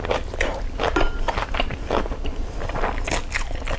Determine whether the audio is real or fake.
real